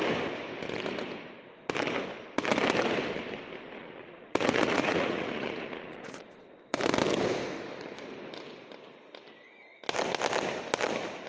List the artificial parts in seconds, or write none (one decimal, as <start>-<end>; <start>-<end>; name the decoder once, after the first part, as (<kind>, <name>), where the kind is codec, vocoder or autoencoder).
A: 3.8-6.4 (vocoder, Vocos)